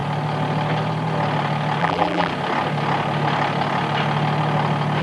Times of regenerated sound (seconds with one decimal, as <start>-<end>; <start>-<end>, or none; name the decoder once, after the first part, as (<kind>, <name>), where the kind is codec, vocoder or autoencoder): 1.8-2.3 (vocoder, BigVGAN v2)